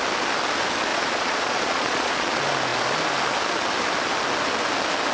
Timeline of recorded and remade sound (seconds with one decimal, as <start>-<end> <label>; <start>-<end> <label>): 0.0-0.9 recorded; 0.9-2.3 remade; 2.3-5.1 recorded